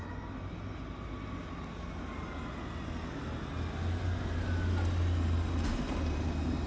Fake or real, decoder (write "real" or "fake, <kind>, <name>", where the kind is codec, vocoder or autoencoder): real